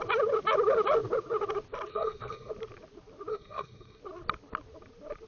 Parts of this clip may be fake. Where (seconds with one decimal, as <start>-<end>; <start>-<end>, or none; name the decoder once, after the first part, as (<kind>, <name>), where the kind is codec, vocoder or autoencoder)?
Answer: 1.9-2.5 (codec, SNAC); 3.3-4.0